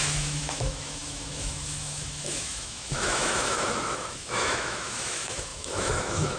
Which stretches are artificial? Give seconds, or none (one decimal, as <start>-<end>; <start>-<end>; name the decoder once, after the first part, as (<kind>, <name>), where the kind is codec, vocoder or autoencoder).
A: 0.0-6.4 (autoencoder, DAC-VAE)